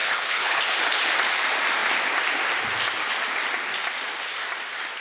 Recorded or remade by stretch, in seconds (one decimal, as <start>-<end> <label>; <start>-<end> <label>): 0.0-0.6 remade; 0.6-5.0 recorded